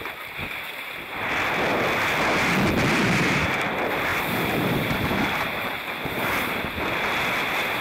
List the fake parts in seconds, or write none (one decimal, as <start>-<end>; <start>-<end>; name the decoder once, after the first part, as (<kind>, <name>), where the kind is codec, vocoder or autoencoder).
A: 3.0-3.6 (vocoder, BigVGAN v2); 4.1-6.5